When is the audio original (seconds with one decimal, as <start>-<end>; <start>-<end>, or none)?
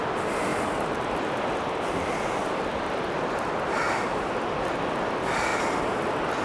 0.0-6.4